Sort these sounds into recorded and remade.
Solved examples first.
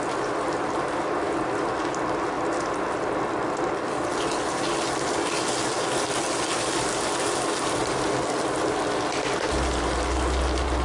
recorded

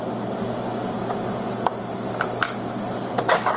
recorded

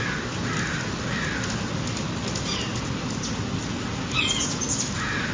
recorded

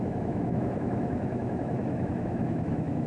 remade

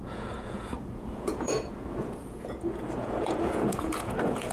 remade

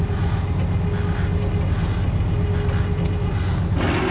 recorded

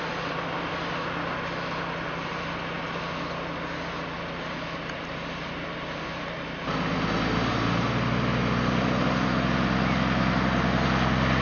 recorded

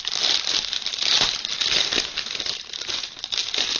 recorded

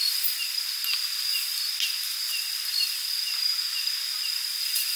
recorded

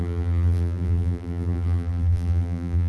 remade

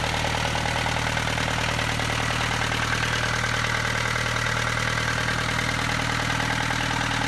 recorded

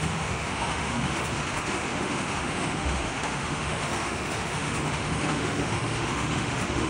remade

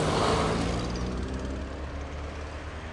recorded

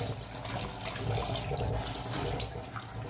recorded